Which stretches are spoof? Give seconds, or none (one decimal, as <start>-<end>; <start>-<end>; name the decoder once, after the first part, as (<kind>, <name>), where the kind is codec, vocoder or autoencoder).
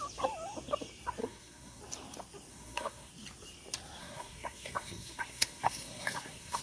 1.2-1.8 (codec, SNAC); 2.5-3.1; 4.0-6.6